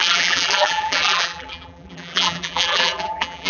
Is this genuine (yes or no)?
no